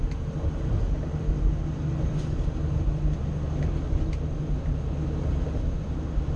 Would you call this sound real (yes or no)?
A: yes